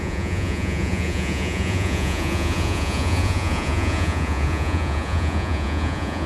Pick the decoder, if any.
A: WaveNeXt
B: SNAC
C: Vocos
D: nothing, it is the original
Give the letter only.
C